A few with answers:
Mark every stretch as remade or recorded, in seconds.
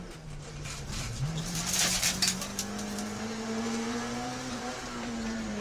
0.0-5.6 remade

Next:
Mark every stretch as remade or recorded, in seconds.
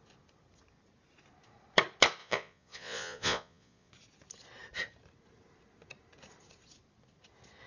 0.0-2.2 recorded; 2.2-3.9 remade; 3.9-7.7 recorded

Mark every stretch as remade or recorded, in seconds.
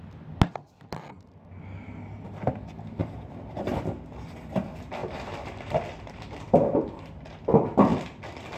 0.0-5.0 recorded; 5.0-7.1 remade; 7.1-8.6 recorded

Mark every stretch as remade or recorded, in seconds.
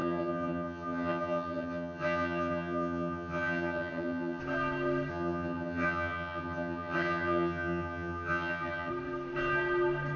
0.0-4.4 remade; 4.4-5.1 recorded; 5.1-8.9 remade; 8.9-10.2 recorded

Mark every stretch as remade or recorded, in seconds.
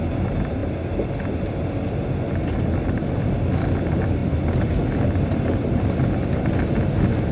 0.0-7.3 recorded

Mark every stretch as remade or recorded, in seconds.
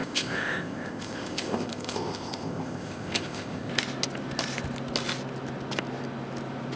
0.0-3.7 remade; 3.7-6.8 recorded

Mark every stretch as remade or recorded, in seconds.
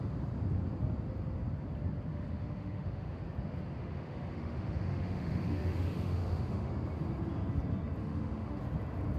0.0-2.1 recorded; 2.1-3.2 remade; 3.2-3.8 recorded; 3.8-6.7 remade; 6.7-8.0 recorded; 8.0-8.6 remade; 8.6-9.2 recorded